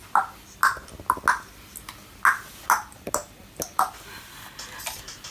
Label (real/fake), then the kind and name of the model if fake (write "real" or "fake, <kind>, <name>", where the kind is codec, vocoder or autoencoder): real